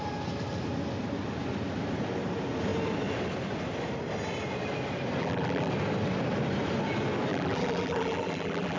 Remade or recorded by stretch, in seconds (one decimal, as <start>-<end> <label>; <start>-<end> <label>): 0.0-5.2 recorded; 5.2-5.7 remade; 5.7-7.3 recorded; 7.3-8.8 remade